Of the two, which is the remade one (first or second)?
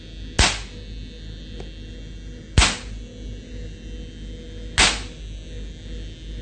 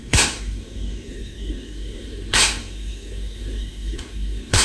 second